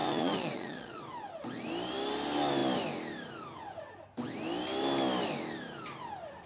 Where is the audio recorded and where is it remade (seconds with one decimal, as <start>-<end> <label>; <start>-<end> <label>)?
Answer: 0.0-1.0 remade; 1.0-6.5 recorded